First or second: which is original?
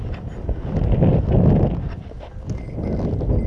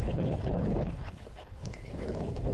first